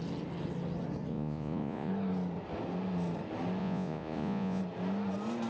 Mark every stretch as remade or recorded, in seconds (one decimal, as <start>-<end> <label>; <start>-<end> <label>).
0.0-1.1 recorded; 1.1-1.9 remade; 1.9-3.6 recorded; 3.6-4.6 remade; 4.6-5.5 recorded